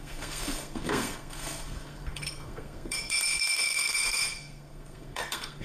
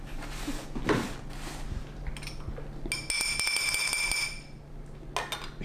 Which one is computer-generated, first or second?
first